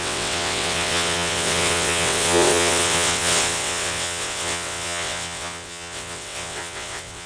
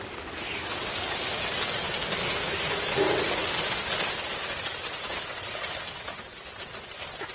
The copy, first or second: first